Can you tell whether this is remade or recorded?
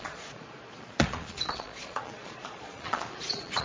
remade